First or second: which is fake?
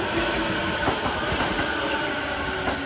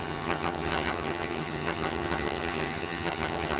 second